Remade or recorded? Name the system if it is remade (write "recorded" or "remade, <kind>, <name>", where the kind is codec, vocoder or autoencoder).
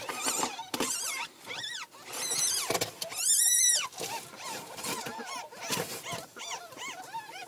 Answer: remade, vocoder, BigVGAN v2